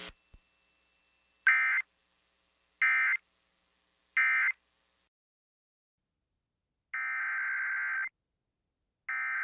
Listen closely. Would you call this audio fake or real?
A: real